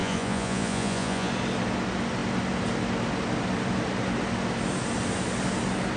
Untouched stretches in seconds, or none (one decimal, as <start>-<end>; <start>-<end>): 1.3-6.0